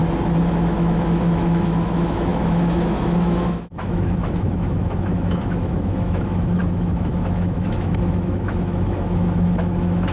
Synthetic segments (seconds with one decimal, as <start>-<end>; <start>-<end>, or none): 0.5-10.1